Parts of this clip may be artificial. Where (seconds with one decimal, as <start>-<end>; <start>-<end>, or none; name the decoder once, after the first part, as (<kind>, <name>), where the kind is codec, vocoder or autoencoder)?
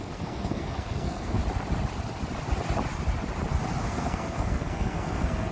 0.0-1.4 (codec, SNAC); 3.8-5.5